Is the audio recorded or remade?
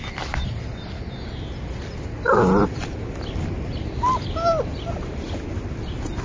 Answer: recorded